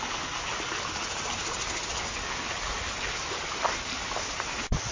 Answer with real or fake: real